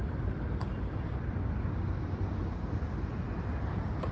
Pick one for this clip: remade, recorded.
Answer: recorded